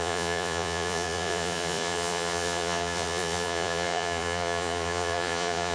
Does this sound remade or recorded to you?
remade